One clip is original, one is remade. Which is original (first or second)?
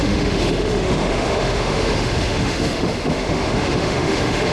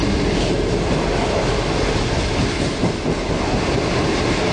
second